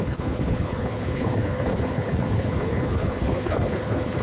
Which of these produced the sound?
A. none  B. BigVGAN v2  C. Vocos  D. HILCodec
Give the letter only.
D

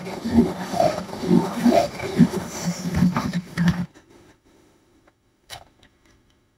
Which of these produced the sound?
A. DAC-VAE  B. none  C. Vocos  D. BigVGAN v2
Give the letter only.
A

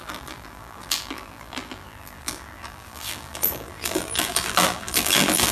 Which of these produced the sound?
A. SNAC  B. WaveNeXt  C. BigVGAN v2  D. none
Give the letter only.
C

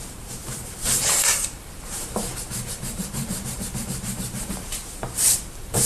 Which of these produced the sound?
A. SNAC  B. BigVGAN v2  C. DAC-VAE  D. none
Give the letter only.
B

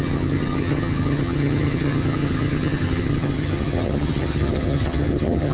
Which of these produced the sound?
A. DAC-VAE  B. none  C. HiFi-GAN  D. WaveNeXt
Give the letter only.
C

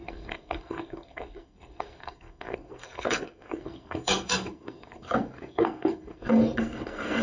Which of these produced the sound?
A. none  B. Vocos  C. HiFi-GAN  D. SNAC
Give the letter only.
D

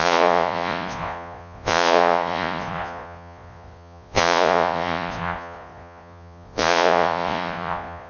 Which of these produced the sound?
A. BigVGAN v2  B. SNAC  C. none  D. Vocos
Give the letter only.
D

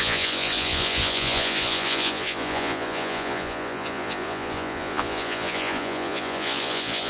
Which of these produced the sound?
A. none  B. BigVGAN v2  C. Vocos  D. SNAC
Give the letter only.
C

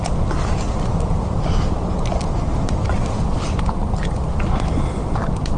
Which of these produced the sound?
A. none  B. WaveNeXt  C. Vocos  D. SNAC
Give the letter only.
A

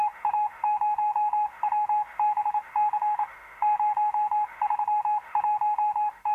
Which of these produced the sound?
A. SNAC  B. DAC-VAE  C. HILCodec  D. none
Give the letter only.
B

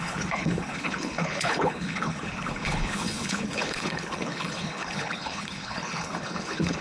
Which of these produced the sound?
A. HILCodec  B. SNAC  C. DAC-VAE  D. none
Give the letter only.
A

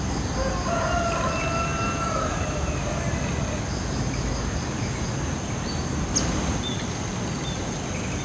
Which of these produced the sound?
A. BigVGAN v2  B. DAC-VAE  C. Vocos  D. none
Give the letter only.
D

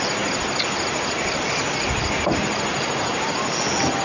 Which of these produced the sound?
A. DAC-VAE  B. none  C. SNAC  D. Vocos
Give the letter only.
B